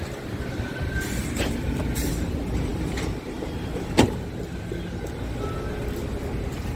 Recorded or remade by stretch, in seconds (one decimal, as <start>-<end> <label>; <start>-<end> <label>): 0.0-2.7 remade; 2.7-6.8 recorded